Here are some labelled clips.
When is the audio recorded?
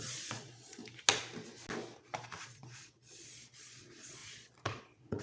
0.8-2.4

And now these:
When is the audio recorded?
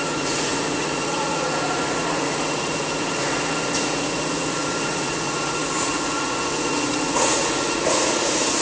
none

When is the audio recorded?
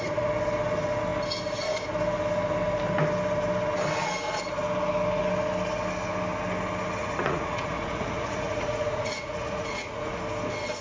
0.0-7.0; 10.2-10.8